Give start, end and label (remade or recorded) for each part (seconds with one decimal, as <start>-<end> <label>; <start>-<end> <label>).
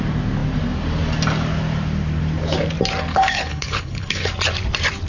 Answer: 0.0-3.1 recorded; 3.1-4.3 remade; 4.3-5.1 recorded